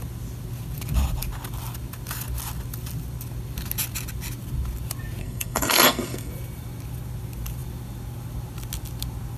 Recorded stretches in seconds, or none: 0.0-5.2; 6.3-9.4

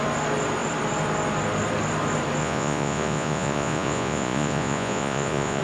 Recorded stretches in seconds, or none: 0.0-2.4